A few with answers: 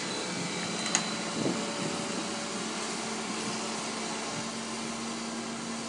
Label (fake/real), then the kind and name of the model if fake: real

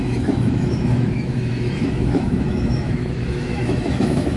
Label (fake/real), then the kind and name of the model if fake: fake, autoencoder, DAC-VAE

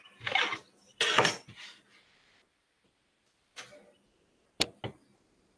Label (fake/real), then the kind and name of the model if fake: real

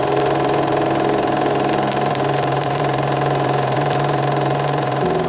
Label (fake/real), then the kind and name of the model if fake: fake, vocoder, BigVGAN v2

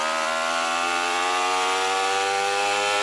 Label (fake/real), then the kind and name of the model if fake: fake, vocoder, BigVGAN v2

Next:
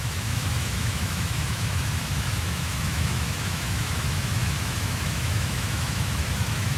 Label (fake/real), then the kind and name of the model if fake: fake, autoencoder, DAC-VAE